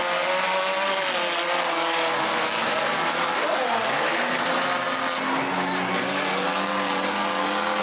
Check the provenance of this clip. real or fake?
real